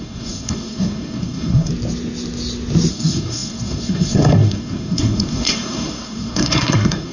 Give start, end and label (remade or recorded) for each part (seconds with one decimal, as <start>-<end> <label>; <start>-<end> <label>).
0.0-1.7 remade; 1.7-2.9 recorded; 2.9-7.1 remade

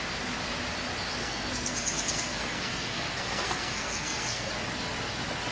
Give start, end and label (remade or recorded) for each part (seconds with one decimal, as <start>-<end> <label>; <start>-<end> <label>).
0.0-1.2 recorded; 1.2-4.5 remade; 4.5-5.5 recorded

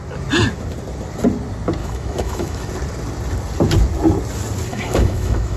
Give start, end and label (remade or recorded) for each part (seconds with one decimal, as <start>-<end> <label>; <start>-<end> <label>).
0.0-1.8 recorded; 1.8-2.7 remade; 2.7-4.7 recorded; 4.7-5.6 remade

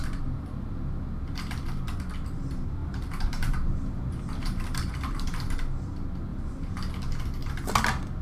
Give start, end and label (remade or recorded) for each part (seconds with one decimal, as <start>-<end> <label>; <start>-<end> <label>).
0.0-2.8 recorded; 2.8-5.5 remade; 5.5-6.3 recorded; 6.3-6.9 remade; 6.9-8.2 recorded

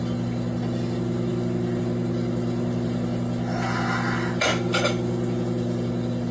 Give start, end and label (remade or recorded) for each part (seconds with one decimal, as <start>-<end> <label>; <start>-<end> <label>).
0.0-6.3 recorded

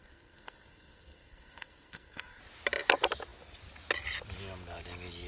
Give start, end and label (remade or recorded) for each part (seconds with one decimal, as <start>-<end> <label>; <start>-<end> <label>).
0.0-2.4 remade; 2.4-5.3 recorded

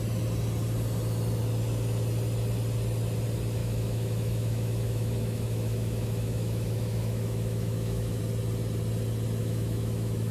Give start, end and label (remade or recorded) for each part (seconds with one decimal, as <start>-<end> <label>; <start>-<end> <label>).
0.0-3.6 recorded; 3.6-8.2 remade; 8.2-9.4 recorded; 9.4-10.3 remade

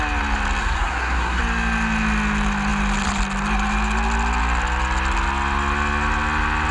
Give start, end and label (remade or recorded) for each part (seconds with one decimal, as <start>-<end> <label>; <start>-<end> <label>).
0.0-0.6 recorded; 0.6-1.4 remade; 1.4-6.7 recorded